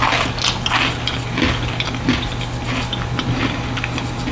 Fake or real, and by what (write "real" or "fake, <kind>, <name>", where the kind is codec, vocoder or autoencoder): real